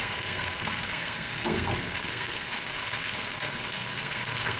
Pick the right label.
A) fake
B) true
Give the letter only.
A